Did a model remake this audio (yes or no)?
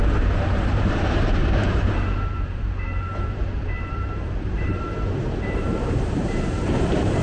yes